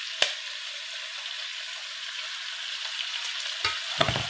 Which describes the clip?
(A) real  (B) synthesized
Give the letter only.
A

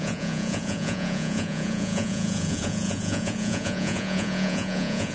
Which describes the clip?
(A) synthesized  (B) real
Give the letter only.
A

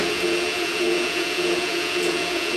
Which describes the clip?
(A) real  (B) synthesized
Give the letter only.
B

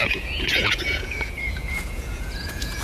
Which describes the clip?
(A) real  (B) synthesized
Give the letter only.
B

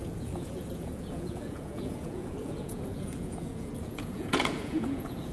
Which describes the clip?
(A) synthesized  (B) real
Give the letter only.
A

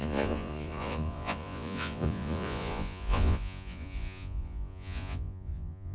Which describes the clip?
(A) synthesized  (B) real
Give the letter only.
A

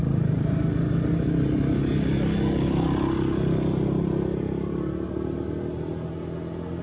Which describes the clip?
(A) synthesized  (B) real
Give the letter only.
B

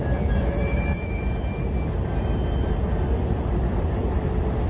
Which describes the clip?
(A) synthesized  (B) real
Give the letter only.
B